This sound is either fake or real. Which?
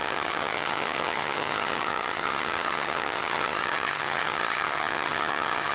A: fake